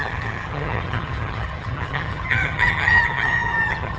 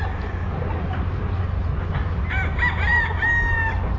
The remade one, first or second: first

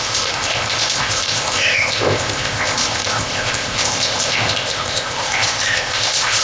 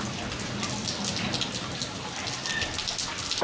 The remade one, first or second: first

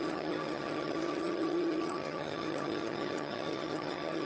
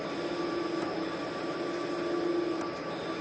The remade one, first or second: first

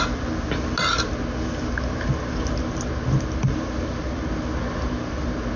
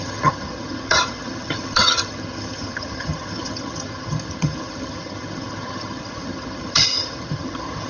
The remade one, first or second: second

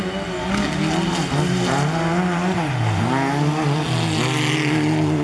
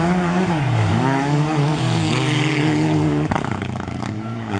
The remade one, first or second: second